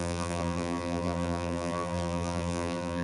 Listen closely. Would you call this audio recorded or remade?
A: remade